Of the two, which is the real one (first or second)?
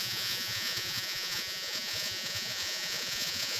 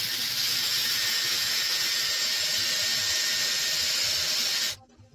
second